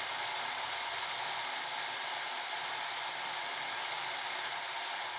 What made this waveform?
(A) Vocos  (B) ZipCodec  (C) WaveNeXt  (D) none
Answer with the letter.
D